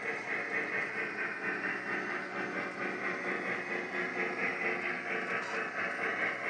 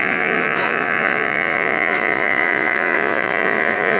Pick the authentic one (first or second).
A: first